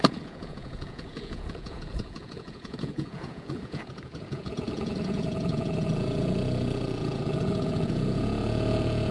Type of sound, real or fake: fake